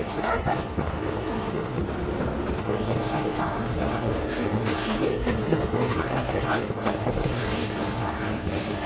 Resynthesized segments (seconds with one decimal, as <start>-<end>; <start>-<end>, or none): 0.0-1.8; 2.6-8.9